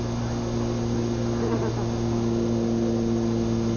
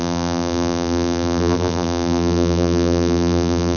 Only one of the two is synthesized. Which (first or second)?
second